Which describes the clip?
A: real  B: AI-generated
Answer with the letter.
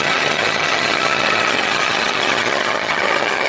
B